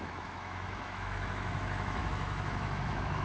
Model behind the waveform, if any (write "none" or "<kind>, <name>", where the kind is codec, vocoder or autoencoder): autoencoder, DAC-VAE